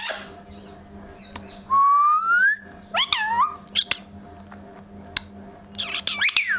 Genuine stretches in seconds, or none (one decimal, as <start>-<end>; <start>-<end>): 0.0-6.6